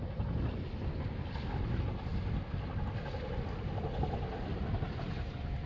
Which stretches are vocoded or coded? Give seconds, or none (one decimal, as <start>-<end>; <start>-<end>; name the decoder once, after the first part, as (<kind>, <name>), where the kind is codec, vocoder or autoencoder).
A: none